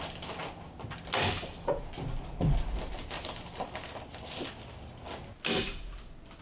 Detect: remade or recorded recorded